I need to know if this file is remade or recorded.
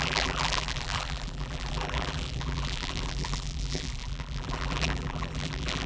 remade